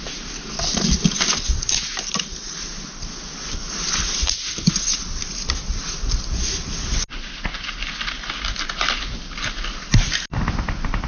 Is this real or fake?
real